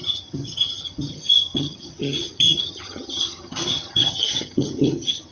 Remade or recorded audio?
remade